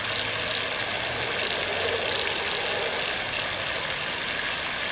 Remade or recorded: recorded